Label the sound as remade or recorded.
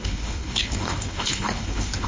remade